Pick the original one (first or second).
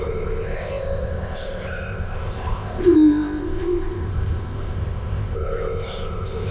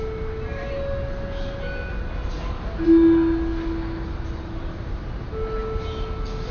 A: second